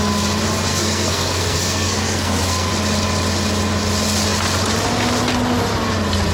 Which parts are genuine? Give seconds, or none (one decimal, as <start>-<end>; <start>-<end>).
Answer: 0.0-0.7; 2.7-6.3